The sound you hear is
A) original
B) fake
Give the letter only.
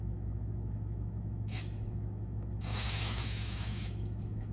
B